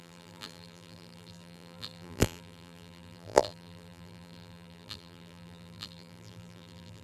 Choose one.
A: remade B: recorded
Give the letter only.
A